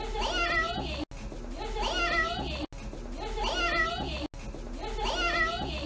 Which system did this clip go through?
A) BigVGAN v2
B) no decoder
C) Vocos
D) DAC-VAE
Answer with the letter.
B